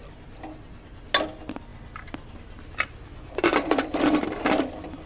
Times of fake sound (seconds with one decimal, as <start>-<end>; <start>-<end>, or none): 1.7-5.1